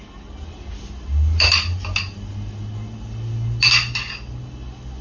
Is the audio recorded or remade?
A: recorded